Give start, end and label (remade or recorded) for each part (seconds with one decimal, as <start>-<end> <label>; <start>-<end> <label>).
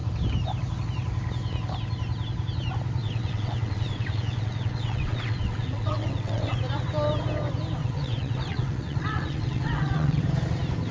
0.0-3.0 recorded; 3.0-6.6 remade; 6.6-7.8 recorded; 7.8-10.2 remade; 10.2-10.9 recorded